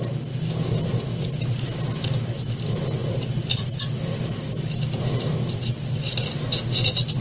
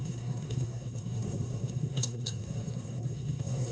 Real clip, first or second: first